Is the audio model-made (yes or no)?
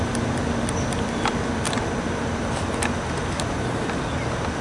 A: no